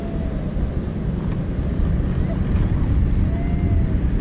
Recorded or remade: recorded